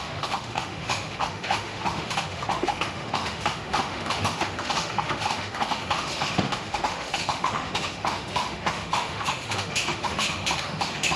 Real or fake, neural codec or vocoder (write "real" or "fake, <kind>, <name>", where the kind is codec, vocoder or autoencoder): fake, autoencoder, DAC-VAE